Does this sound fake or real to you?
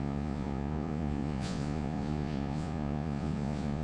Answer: fake